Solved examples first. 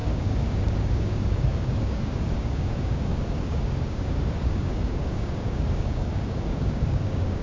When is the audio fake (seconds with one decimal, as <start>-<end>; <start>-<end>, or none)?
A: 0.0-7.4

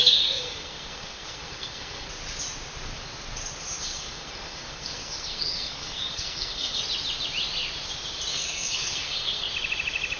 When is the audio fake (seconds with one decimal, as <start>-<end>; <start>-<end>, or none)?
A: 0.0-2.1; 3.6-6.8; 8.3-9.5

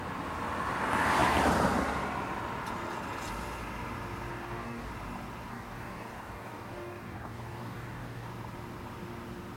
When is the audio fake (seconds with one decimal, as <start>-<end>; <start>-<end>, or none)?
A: 4.3-4.9; 5.5-8.3

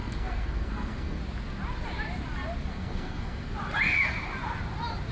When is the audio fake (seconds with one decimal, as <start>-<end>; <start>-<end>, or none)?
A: 0.0-1.2; 2.7-3.5

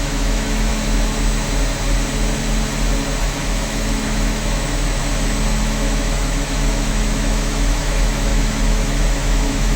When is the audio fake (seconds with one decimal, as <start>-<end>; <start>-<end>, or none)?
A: 0.0-0.7; 3.2-5.0; 5.6-9.8

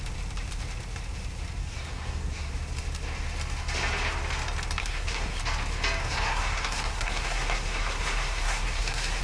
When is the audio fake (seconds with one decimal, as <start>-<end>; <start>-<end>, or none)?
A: 1.6-2.5; 4.8-5.4; 6.0-9.2